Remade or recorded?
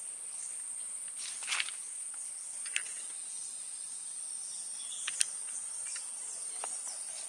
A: recorded